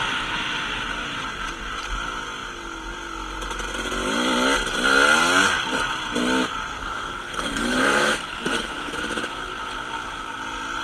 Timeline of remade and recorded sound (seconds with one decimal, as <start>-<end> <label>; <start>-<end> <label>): 0.0-6.7 recorded; 6.7-9.0 remade; 9.0-10.8 recorded